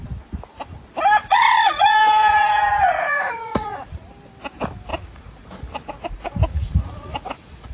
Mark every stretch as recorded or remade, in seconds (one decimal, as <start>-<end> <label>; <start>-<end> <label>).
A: 0.0-1.2 recorded; 1.2-4.0 remade; 4.0-4.9 recorded; 4.9-7.7 remade